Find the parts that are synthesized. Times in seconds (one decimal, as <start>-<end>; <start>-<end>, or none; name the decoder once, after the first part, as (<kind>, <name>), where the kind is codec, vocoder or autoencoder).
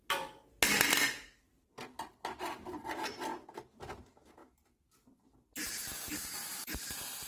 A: 1.5-3.3 (vocoder, BigVGAN v2); 4.0-4.4; 6.1-7.3